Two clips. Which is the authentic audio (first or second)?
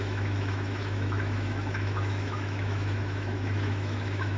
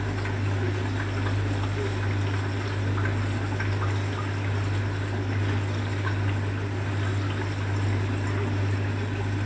second